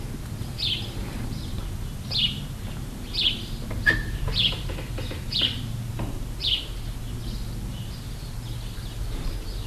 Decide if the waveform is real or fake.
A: real